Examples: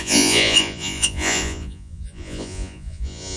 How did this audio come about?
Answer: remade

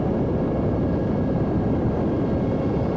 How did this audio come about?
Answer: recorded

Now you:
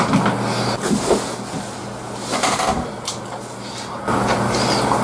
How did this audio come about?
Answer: recorded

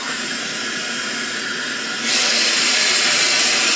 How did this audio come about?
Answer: remade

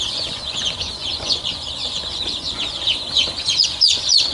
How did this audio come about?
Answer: remade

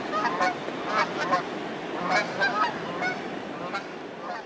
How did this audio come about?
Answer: recorded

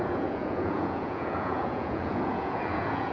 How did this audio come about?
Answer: remade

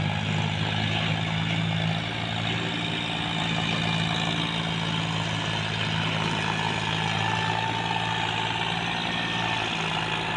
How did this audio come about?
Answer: recorded